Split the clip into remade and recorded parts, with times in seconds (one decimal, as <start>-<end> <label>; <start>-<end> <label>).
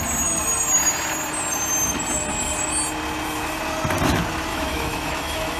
0.0-4.5 recorded; 4.5-5.6 remade